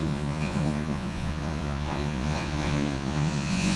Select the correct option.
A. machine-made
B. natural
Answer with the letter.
A